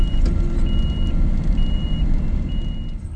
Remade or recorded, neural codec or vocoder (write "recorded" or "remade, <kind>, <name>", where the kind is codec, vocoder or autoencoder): recorded